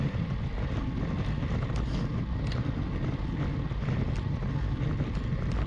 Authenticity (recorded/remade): recorded